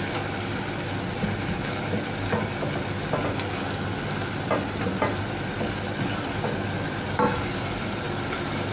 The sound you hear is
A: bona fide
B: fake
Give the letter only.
A